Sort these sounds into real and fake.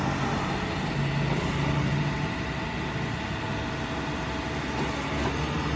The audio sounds real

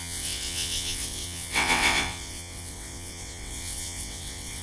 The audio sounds fake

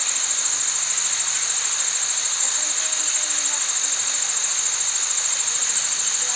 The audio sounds real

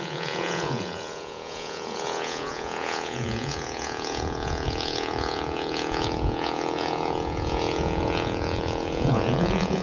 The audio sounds fake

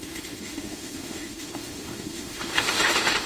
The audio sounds fake